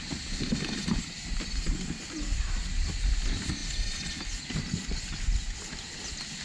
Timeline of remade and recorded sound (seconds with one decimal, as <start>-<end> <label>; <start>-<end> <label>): 0.0-3.6 recorded; 3.6-4.2 remade; 4.2-6.4 recorded